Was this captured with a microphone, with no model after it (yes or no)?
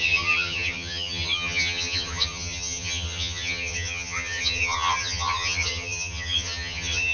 no